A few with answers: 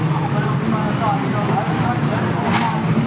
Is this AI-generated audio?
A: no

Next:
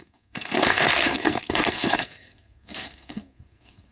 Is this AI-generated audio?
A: yes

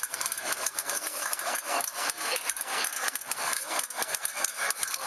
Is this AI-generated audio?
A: yes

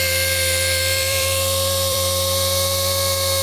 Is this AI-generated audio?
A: yes